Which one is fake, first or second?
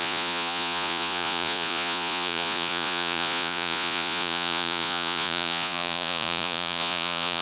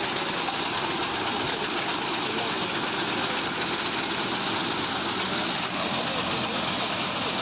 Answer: first